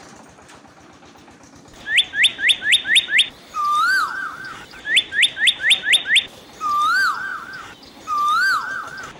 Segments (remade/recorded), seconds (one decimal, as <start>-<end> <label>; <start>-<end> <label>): 0.0-2.3 recorded; 2.3-5.9 remade; 5.9-9.2 recorded